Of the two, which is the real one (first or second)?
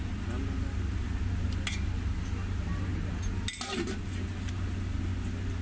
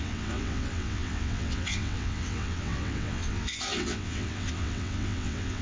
first